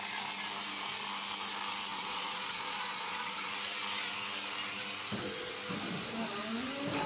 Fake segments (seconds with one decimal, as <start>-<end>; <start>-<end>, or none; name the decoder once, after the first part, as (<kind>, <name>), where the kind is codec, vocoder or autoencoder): 1.9-3.5 (vocoder, Vocos)